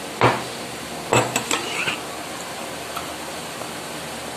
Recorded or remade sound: recorded